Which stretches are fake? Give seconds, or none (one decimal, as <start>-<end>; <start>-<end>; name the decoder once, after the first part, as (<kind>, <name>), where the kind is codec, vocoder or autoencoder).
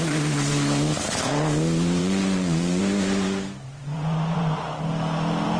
2.0-2.8 (vocoder, Vocos); 3.8-4.8